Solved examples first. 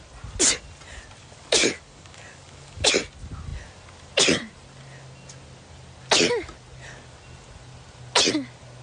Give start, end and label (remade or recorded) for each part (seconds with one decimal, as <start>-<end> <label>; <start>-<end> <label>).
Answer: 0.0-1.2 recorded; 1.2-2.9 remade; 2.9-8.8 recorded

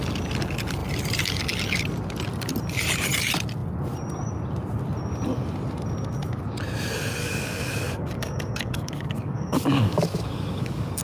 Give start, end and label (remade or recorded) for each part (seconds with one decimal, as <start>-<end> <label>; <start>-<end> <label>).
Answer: 0.0-7.2 recorded; 7.2-11.0 remade

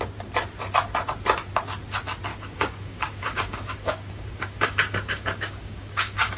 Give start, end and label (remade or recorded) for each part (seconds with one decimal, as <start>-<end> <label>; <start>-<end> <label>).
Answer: 0.0-2.3 recorded; 2.3-6.4 remade

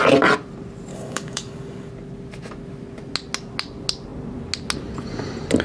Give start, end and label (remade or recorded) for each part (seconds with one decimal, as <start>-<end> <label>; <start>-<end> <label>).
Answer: 0.0-0.9 recorded; 0.9-1.9 remade; 1.9-5.6 recorded